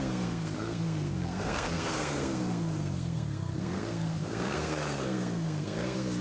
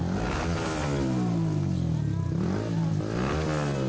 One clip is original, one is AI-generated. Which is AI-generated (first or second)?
first